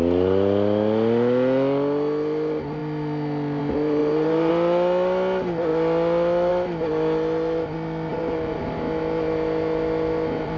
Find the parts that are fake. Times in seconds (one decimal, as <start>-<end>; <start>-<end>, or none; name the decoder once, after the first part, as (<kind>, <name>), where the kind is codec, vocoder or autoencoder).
4.0-4.5 (vocoder, BigVGAN v2); 8.1-8.6